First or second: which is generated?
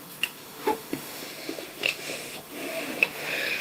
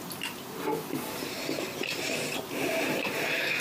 first